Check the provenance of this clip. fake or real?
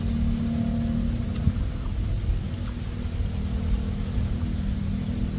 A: real